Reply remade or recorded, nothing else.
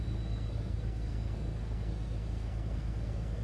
remade